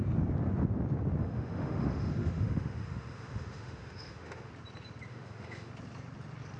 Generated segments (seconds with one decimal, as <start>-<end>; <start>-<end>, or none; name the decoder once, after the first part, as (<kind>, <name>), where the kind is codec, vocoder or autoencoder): 1.2-4.5 (autoencoder, DAC-VAE); 5.1-5.7